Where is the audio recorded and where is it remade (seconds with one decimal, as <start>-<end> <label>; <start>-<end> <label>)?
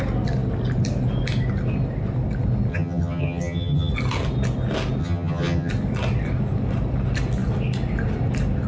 0.0-2.7 recorded; 2.7-3.9 remade; 3.9-5.0 recorded; 5.0-5.7 remade; 5.7-8.7 recorded